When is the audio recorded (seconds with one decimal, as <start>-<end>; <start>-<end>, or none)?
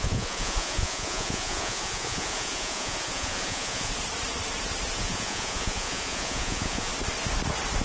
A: 3.9-5.0; 6.9-7.8